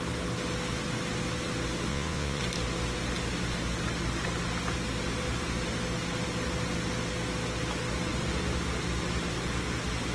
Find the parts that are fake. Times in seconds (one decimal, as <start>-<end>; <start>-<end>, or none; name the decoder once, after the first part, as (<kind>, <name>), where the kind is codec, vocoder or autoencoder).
1.9-2.4 (vocoder, Vocos)